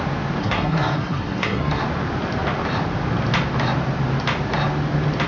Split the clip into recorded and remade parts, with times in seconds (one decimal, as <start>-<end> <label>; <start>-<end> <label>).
0.0-0.4 recorded; 0.4-1.8 remade; 1.8-5.3 recorded